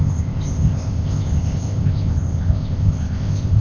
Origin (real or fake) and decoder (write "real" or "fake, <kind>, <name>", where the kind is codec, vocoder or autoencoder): fake, codec, ZipCodec